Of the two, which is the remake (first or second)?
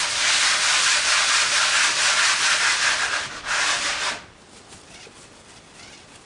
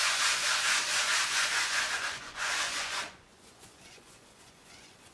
second